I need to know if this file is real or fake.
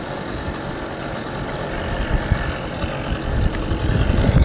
real